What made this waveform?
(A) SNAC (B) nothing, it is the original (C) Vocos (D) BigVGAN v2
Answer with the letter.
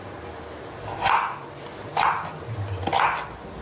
B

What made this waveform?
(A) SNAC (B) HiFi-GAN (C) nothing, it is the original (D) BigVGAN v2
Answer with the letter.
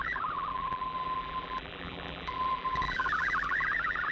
D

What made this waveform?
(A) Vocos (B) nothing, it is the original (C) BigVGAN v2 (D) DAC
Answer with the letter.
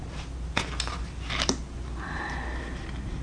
B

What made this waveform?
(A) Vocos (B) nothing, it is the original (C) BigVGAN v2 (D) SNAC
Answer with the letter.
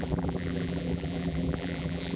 C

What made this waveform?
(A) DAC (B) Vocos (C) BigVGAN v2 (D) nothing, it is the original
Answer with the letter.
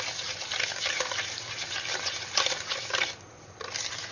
D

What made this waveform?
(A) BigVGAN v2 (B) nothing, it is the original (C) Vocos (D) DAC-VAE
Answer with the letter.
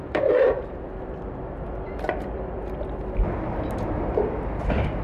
A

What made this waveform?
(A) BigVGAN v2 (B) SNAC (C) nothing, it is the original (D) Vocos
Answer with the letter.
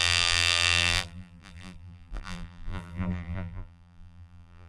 A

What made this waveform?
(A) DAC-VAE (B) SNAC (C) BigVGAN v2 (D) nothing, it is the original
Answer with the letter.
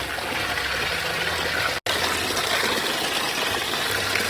D